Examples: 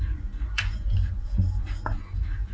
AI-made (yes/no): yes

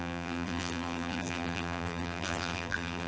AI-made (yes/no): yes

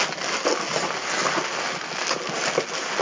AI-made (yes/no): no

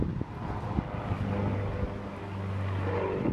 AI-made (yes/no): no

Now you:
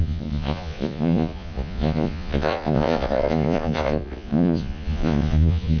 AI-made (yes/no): yes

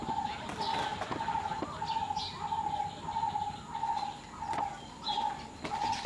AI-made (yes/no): no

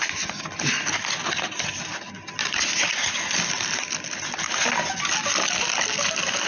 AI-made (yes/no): no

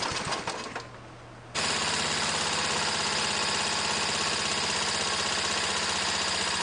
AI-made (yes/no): no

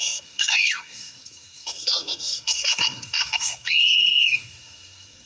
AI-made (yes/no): yes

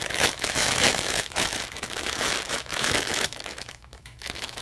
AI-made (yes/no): yes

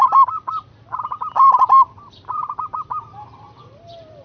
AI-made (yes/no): yes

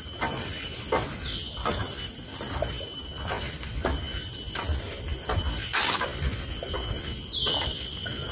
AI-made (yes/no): no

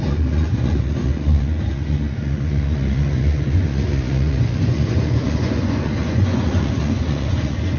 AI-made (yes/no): yes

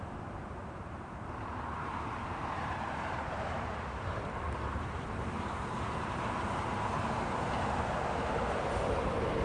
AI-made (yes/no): yes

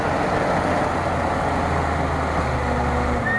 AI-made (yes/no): no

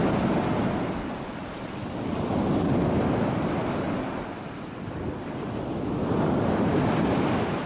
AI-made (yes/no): no